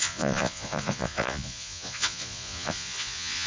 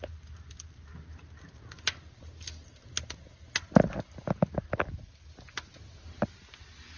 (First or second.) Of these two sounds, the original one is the second